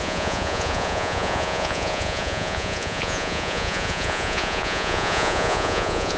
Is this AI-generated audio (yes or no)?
yes